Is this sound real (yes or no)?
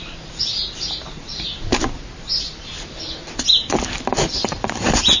yes